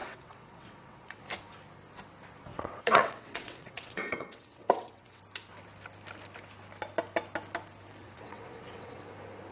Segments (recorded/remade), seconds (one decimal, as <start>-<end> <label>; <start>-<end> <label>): 0.0-1.2 remade; 1.2-2.5 recorded; 2.5-5.2 remade; 5.2-8.0 recorded; 8.0-9.0 remade; 9.0-9.5 recorded